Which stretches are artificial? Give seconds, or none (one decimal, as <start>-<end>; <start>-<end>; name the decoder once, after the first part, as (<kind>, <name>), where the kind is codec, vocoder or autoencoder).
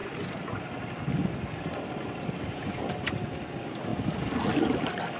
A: 3.1-3.9 (vocoder, BigVGAN v2)